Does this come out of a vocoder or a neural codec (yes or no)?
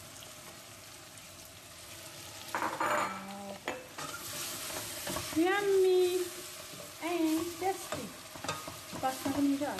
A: no